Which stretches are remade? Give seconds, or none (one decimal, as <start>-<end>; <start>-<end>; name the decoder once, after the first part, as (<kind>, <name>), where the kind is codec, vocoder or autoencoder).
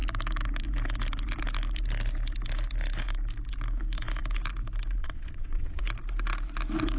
5.0-5.8 (vocoder, WaveNeXt)